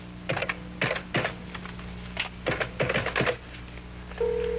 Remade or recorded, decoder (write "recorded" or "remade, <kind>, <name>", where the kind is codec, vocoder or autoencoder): recorded